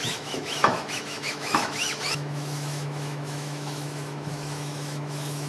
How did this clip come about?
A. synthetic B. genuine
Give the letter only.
A